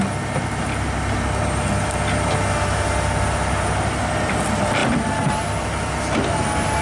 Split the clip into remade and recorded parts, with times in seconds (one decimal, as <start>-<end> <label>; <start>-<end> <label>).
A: 0.0-4.8 recorded; 4.8-5.3 remade; 5.3-6.8 recorded